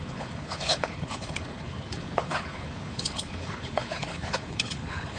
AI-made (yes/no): yes